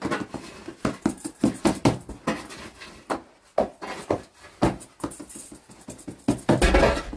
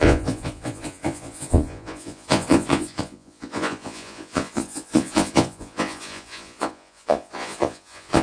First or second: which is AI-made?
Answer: second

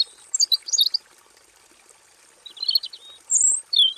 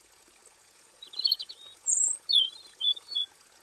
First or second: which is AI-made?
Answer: second